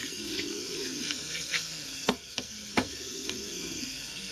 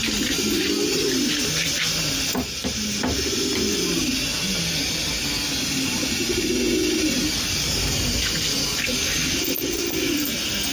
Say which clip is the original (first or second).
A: second